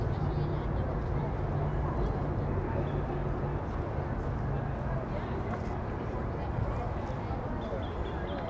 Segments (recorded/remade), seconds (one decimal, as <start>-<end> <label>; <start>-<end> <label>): 0.0-8.5 recorded

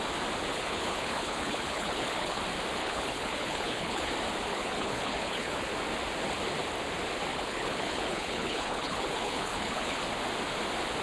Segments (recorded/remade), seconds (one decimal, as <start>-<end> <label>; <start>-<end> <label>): 0.0-0.5 recorded; 0.5-2.4 remade; 2.4-2.8 recorded; 2.8-4.1 remade; 4.1-4.5 recorded; 4.5-5.7 remade; 5.7-7.3 recorded; 7.3-10.0 remade; 10.0-11.0 recorded

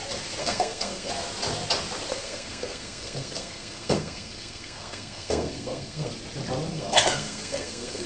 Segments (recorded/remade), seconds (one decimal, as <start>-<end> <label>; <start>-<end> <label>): 0.0-0.4 recorded; 0.4-1.1 remade; 1.1-2.1 recorded; 2.1-6.1 remade; 6.1-6.7 recorded; 6.7-8.1 remade

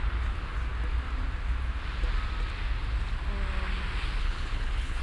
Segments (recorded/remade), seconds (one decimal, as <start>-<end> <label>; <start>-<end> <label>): 0.0-4.2 recorded; 4.2-5.0 remade

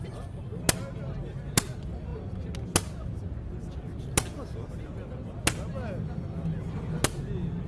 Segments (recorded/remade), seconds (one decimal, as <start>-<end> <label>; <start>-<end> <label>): 0.0-7.7 recorded

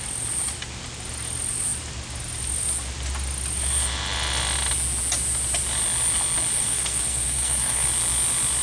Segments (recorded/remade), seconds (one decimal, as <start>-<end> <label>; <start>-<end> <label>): 0.0-6.5 recorded; 6.5-7.9 remade; 7.9-8.6 recorded

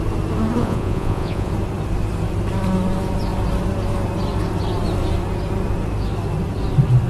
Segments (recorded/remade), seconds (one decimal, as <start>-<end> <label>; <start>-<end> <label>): 0.0-0.6 recorded; 0.6-1.5 remade; 1.5-7.1 recorded